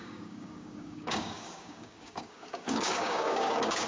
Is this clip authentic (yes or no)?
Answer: no